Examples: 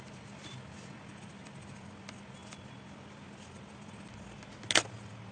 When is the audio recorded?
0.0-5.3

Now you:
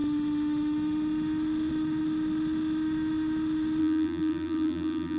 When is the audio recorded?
0.0-3.8

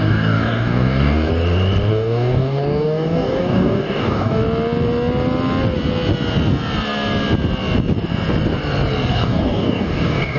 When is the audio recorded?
1.3-1.9; 4.4-9.1

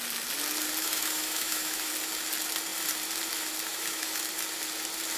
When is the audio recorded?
0.0-0.8; 1.9-3.7; 4.2-5.2

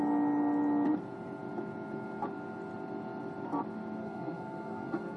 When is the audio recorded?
0.0-4.0

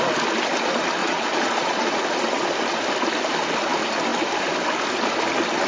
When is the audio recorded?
0.0-1.0; 2.0-5.7